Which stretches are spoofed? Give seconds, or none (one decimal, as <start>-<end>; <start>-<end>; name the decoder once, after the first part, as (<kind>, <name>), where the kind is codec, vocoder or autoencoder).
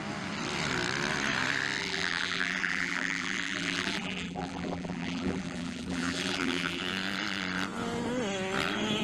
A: 1.8-6.8 (vocoder, BigVGAN v2)